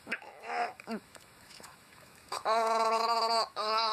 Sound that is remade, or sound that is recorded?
remade